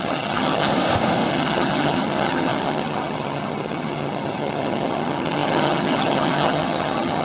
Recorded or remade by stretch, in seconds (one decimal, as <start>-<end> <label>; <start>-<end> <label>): 0.0-0.7 remade; 0.7-1.3 recorded; 1.3-7.2 remade